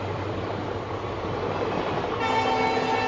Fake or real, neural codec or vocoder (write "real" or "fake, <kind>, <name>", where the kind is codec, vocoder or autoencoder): real